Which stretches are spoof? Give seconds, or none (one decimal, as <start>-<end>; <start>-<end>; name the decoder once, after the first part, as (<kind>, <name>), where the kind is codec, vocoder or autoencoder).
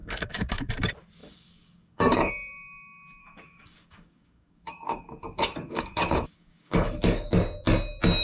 0.0-0.7 (codec, DAC); 1.2-2.3; 3.2-7.3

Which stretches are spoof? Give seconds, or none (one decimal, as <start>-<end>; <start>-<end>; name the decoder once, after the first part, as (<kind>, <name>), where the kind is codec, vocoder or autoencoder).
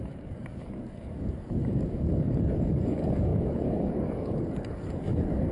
0.0-5.5 (codec, DAC)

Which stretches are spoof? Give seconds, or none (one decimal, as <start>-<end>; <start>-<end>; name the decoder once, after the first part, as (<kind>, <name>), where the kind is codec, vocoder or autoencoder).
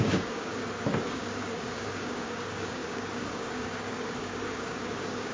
0.0-0.6 (codec, DAC); 1.1-5.3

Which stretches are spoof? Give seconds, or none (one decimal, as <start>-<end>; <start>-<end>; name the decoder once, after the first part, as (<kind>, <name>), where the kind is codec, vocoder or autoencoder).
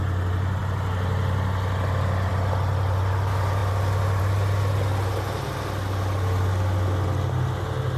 none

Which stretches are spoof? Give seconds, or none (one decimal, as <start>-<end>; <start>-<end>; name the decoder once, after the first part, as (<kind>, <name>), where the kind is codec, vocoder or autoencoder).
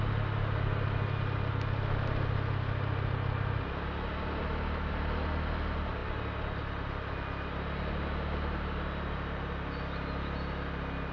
none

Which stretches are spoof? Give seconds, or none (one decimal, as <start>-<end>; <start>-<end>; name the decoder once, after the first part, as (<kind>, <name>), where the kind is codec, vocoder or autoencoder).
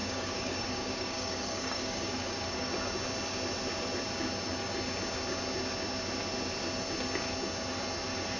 0.0-2.7 (codec, DAC)